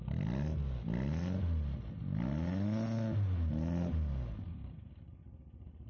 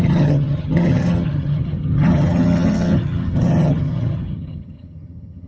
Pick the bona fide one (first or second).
first